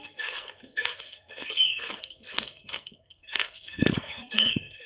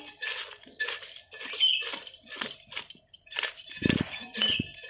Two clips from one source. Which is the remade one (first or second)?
first